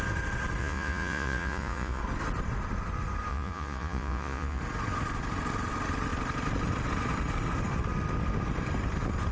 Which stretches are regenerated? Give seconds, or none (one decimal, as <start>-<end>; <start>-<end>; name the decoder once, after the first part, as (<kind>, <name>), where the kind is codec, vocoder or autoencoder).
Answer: 0.6-2.0 (vocoder, Vocos); 3.3-4.6